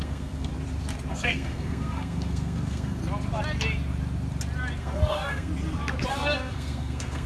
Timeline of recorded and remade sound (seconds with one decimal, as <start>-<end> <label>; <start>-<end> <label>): 0.0-0.5 remade; 0.5-1.1 recorded; 1.1-3.0 remade; 3.0-4.8 recorded; 4.8-5.5 remade; 5.5-6.1 recorded; 6.1-7.3 remade